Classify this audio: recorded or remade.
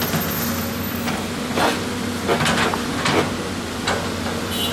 recorded